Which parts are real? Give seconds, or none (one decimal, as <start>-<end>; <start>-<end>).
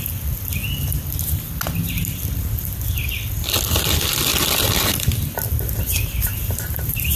0.0-7.2